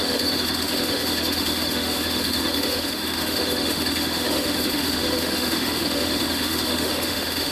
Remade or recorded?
remade